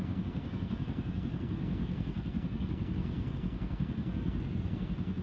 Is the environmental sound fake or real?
fake